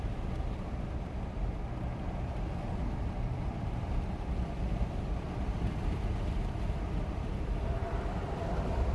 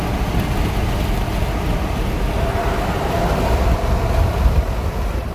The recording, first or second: second